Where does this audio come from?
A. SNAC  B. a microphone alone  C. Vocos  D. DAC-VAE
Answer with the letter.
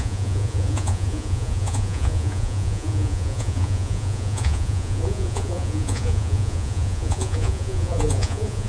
C